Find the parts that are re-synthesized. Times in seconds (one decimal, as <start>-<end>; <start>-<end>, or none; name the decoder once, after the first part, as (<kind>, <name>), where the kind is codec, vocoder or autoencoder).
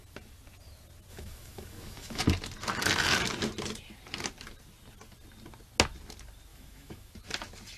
1.1-2.2 (autoencoder, DAC-VAE); 6.5-7.1